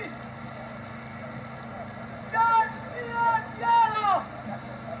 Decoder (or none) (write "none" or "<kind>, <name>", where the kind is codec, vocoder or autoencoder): none